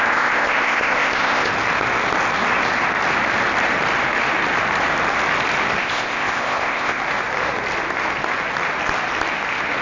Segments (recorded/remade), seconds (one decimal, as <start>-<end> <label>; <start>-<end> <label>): 0.0-1.5 remade; 1.5-5.8 recorded; 5.8-7.0 remade; 7.0-9.8 recorded